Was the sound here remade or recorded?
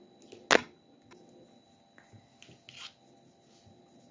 recorded